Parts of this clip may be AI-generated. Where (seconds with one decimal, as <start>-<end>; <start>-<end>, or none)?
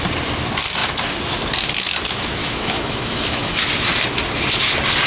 2.4-3.7